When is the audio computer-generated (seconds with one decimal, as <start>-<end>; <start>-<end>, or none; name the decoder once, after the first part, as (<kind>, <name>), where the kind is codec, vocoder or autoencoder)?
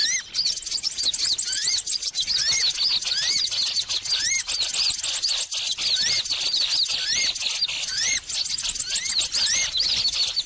none